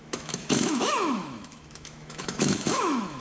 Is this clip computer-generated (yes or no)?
yes